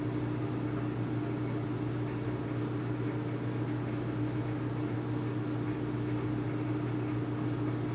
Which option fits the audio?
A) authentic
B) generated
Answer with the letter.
A